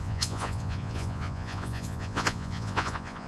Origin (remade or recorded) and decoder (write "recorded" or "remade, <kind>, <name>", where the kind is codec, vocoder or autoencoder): remade, vocoder, Vocos